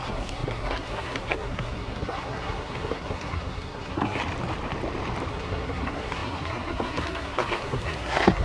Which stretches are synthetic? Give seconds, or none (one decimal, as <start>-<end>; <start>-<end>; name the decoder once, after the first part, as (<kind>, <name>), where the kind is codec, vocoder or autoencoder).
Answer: 0.0-4.2 (codec, SNAC); 5.3-8.4